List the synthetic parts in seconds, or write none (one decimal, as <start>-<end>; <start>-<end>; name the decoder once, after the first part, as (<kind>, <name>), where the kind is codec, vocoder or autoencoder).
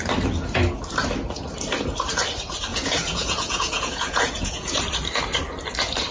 2.7-4.8 (vocoder, Vocos)